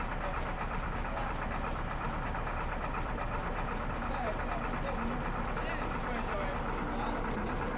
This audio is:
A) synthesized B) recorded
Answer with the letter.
B